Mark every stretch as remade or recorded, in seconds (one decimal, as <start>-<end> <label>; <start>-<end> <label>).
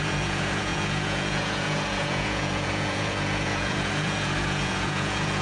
0.0-5.4 remade